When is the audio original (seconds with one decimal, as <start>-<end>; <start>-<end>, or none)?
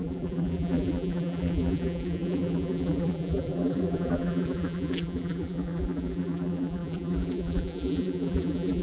none